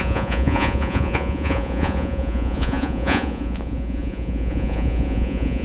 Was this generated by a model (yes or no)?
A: yes